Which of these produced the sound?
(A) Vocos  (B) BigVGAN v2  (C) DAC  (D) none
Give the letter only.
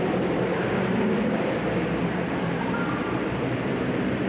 B